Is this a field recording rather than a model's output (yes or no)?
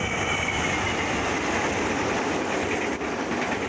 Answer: yes